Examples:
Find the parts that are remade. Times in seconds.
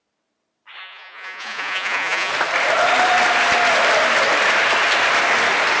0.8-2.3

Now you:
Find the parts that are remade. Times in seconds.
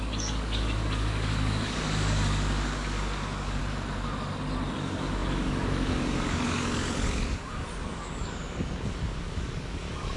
0.0-3.6; 4.8-10.2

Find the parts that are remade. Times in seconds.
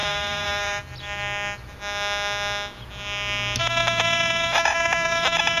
0.0-0.8; 3.6-5.6